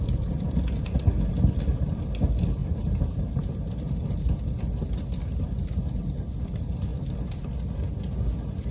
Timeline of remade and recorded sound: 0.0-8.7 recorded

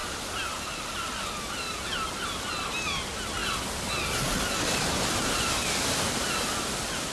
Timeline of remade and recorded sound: 0.0-7.1 recorded

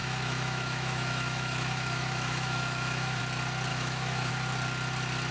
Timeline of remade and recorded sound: 0.0-3.2 remade; 3.2-3.7 recorded; 3.7-4.3 remade; 4.3-5.3 recorded

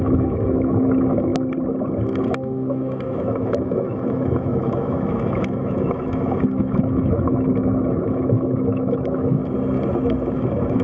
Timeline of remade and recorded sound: 0.0-1.3 remade; 1.3-2.2 recorded; 2.2-9.4 remade; 9.4-10.3 recorded; 10.3-10.8 remade

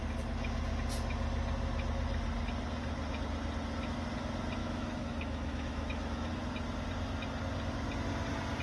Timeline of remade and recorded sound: 0.0-4.6 recorded; 4.6-6.3 remade; 6.3-8.6 recorded

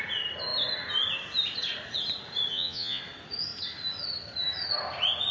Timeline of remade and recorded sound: 0.0-2.5 recorded; 2.5-3.0 remade; 3.0-5.3 recorded

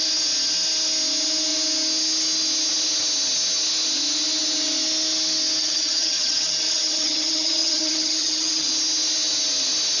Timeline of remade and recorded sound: 0.0-5.6 recorded; 5.6-8.7 remade; 8.7-10.0 recorded